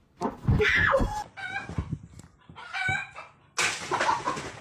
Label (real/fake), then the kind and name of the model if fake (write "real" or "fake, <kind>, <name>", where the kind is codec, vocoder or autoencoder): real